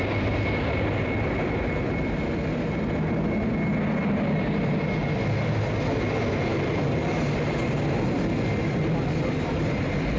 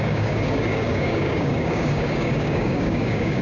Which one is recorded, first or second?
first